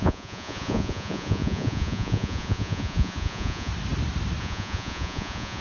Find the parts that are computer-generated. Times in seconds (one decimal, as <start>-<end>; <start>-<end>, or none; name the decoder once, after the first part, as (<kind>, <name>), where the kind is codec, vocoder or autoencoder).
0.0-3.7 (vocoder, Vocos); 4.4-5.6